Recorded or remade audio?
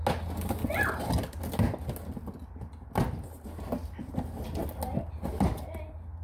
recorded